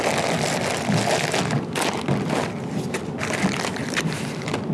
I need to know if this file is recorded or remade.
recorded